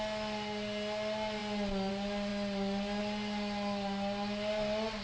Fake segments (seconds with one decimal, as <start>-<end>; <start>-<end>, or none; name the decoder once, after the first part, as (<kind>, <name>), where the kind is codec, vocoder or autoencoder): none